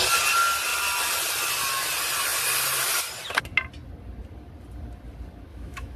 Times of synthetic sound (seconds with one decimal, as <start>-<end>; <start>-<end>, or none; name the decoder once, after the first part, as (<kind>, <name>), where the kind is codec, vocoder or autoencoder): 5.5-6.0 (autoencoder, DAC-VAE)